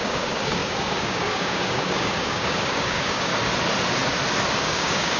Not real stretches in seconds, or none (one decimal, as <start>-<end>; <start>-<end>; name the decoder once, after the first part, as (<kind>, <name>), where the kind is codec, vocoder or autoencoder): 0.0-3.3 (codec, DAC); 4.6-5.2